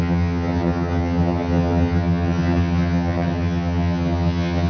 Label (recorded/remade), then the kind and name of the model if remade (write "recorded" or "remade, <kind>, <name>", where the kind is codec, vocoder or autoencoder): remade, vocoder, HiFi-GAN